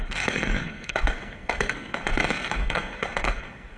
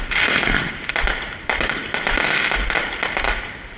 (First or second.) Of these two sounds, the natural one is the second